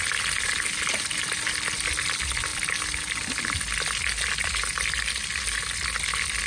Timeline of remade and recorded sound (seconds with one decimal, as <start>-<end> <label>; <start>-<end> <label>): 0.0-6.5 recorded